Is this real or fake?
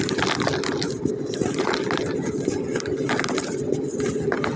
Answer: real